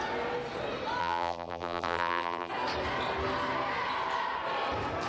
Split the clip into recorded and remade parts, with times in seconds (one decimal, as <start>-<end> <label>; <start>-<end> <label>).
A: 0.0-1.0 recorded; 1.0-2.5 remade; 2.5-5.1 recorded